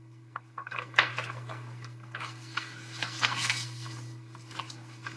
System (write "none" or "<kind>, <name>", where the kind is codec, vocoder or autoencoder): codec, SNAC